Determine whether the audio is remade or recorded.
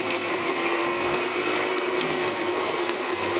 remade